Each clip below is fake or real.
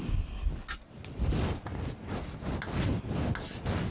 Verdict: real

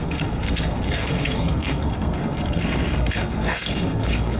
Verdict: fake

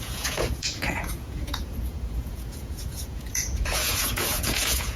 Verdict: fake